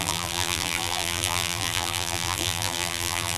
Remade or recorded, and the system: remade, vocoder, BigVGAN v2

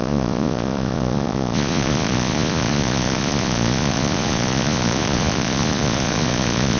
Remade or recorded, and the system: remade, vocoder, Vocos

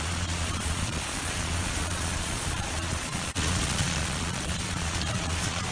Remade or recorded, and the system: remade, vocoder, Vocos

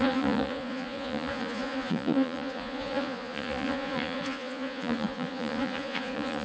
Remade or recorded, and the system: remade, vocoder, Vocos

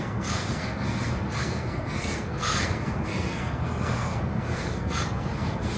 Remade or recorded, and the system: remade, codec, SNAC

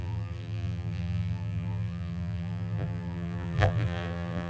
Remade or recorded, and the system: remade, vocoder, BigVGAN v2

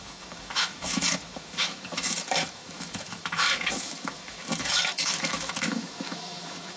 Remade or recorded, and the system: remade, autoencoder, DAC-VAE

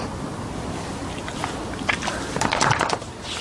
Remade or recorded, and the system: recorded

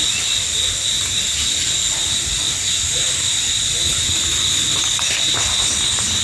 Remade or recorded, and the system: recorded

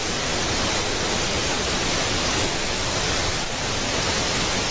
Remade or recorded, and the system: recorded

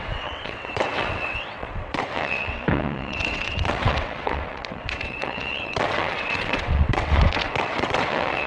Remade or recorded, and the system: remade, vocoder, WaveNeXt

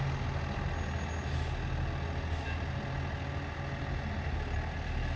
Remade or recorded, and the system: recorded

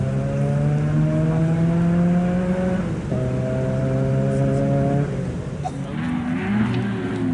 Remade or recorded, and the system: recorded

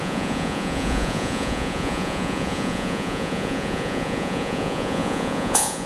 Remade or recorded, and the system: remade, vocoder, Vocos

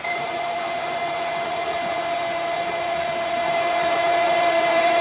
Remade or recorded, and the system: remade, vocoder, Vocos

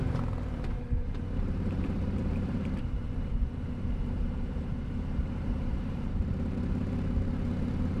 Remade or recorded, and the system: remade, vocoder, BigVGAN v2